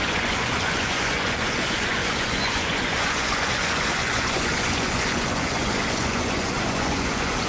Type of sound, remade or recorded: remade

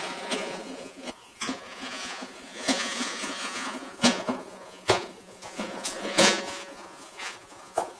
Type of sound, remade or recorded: remade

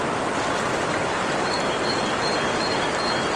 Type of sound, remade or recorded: recorded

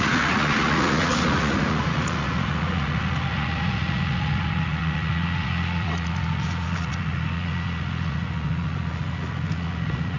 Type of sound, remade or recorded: remade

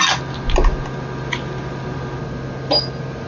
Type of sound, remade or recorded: recorded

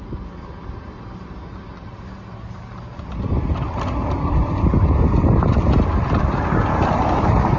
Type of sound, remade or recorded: recorded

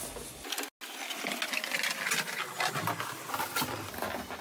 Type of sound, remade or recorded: recorded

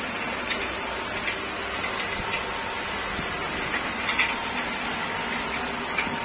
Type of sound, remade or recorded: recorded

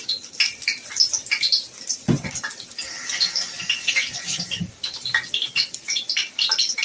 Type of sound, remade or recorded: recorded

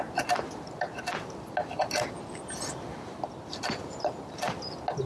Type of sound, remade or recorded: recorded